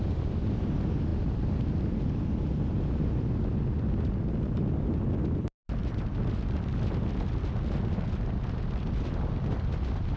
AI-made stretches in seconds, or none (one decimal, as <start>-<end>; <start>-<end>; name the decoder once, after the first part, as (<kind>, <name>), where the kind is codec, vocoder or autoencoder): none